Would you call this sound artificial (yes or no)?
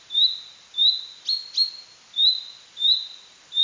no